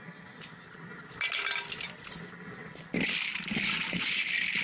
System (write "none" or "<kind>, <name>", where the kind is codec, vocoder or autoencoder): none